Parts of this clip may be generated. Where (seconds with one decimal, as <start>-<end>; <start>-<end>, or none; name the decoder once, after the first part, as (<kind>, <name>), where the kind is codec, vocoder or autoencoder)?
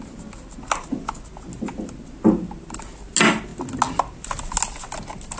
none